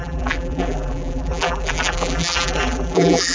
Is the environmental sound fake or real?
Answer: fake